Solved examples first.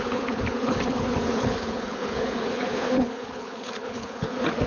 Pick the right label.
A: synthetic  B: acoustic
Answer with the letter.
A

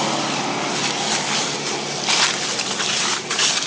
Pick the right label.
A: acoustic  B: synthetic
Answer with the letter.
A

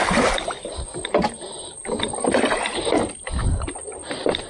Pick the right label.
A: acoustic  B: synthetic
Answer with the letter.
A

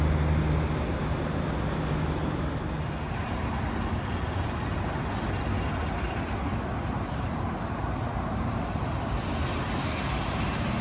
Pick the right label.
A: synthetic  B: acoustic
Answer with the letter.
B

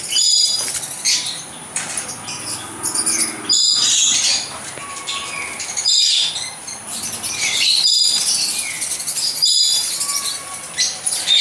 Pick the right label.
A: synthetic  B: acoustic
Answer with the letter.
B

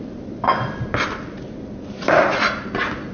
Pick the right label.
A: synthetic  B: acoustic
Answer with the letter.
B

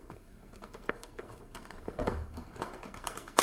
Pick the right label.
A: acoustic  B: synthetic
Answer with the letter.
B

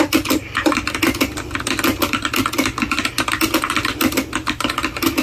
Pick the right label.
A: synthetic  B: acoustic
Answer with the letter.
B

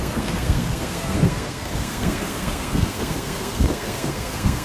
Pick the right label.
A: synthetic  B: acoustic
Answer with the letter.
A